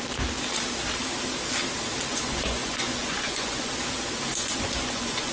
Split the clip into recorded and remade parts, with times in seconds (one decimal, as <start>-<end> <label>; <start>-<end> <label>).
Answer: 0.0-2.1 recorded; 2.1-3.7 remade; 3.7-4.3 recorded; 4.3-5.3 remade